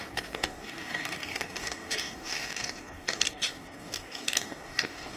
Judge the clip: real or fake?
fake